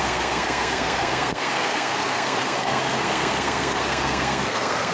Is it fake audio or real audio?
fake